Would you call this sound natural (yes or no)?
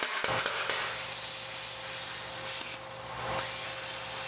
yes